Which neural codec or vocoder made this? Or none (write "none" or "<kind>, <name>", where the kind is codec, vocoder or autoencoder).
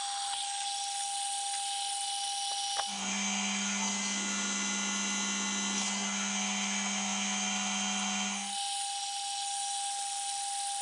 none